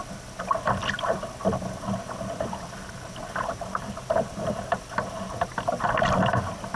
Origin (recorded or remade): recorded